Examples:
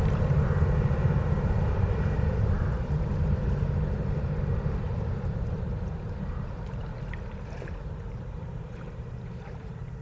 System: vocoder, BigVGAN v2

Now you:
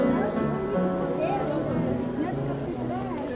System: none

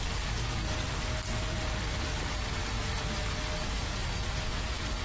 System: none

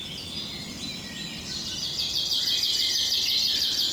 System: none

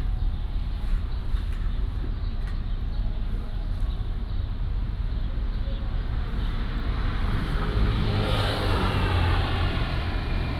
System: vocoder, BigVGAN v2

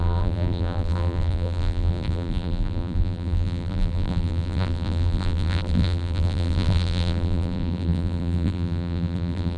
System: vocoder, BigVGAN v2